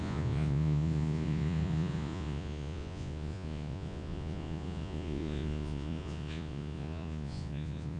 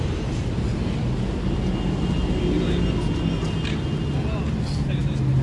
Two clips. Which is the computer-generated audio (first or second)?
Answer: first